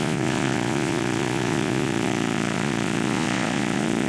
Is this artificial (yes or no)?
yes